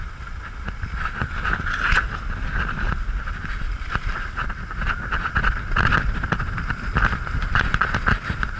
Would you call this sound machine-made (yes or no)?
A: no